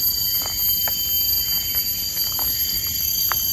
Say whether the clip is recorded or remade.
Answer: recorded